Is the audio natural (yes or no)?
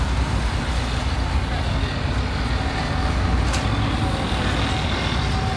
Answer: yes